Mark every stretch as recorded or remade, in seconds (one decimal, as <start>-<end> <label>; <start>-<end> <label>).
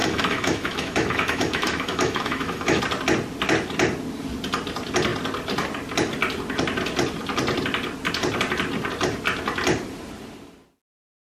0.0-2.8 remade; 2.8-11.4 recorded